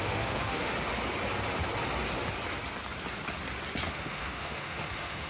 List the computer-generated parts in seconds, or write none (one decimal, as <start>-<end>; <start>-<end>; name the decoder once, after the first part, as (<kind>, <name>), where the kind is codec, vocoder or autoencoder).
0.0-0.7 (autoencoder, DAC-VAE); 3.9-5.3